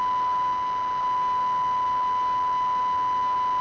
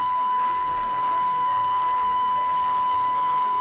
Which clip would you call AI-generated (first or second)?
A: second